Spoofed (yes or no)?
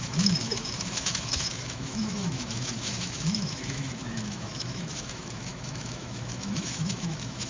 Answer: yes